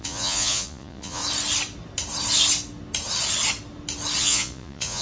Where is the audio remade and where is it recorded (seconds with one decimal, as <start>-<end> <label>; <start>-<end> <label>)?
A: 0.0-1.2 remade; 1.2-4.2 recorded; 4.2-5.0 remade